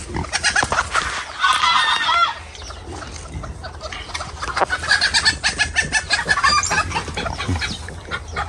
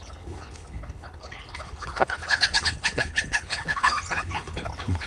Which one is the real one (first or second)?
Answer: first